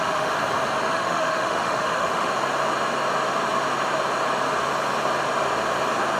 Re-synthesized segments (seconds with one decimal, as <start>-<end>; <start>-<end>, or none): 0.0-0.4; 0.9-2.3